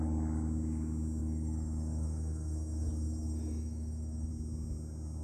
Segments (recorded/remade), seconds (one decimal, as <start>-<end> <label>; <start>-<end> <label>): 0.0-1.2 recorded; 1.2-4.3 remade; 4.3-5.2 recorded